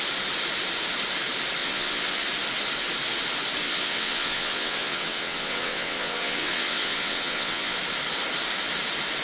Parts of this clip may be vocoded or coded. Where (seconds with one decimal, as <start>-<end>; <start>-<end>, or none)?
1.6-2.2; 3.6-7.8